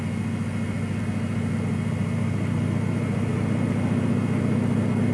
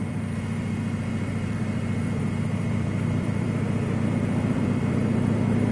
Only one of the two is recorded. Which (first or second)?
first